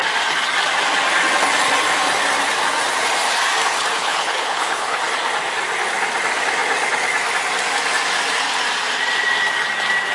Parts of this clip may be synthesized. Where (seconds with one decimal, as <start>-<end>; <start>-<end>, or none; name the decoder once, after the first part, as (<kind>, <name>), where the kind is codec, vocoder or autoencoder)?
4.0-5.0 (codec, HILCodec)